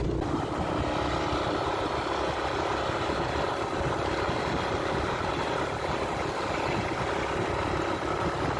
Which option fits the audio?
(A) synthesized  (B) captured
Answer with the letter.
B